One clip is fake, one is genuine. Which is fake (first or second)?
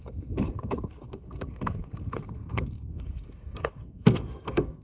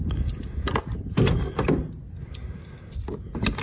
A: first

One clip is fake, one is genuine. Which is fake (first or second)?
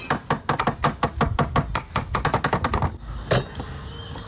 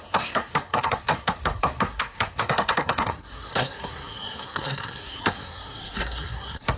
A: second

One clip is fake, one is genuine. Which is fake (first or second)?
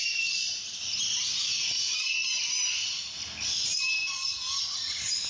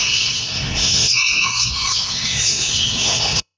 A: second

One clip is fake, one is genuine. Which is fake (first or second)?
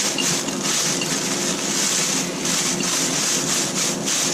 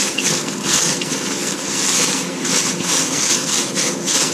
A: second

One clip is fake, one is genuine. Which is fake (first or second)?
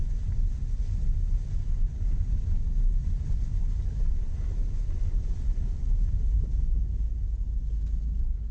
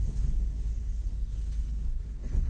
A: second